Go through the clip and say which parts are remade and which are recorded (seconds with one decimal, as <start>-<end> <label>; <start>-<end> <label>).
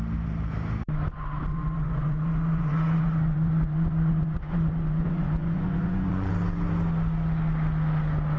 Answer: 0.0-1.5 recorded; 1.5-6.3 remade; 6.3-8.4 recorded